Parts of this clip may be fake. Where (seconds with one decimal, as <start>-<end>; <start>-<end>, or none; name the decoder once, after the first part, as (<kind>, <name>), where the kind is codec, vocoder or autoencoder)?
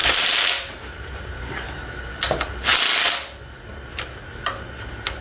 0.0-1.7 (vocoder, BigVGAN v2)